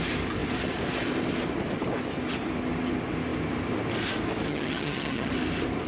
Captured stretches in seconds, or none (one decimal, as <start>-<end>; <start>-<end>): 0.0-4.5; 5.3-5.9